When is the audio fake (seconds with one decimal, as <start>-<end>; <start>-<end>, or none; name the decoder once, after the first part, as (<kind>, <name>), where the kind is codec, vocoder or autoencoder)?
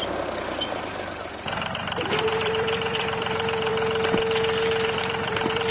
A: 1.8-3.7 (vocoder, BigVGAN v2); 5.0-5.7